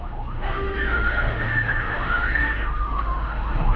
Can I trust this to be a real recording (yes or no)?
no